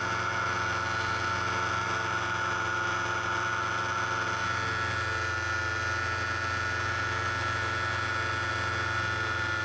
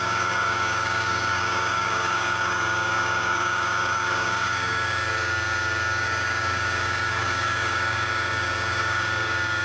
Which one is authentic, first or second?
first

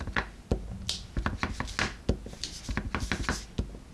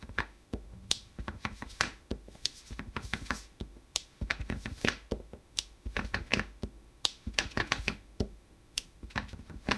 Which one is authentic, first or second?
first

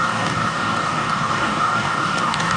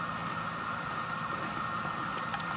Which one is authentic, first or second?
second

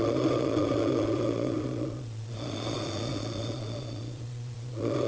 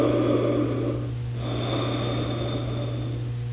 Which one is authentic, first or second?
second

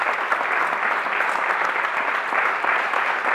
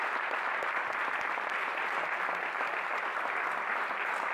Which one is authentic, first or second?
first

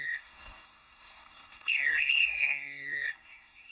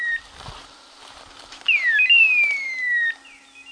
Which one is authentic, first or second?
second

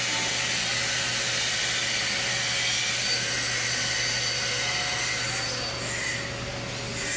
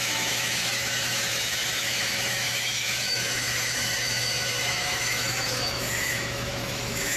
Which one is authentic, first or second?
first